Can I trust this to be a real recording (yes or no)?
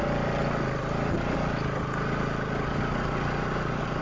yes